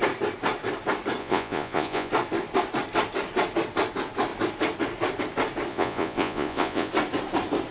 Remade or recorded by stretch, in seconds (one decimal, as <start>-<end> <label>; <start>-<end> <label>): 0.0-1.2 recorded; 1.2-2.1 remade; 2.1-5.7 recorded; 5.7-6.9 remade; 6.9-7.7 recorded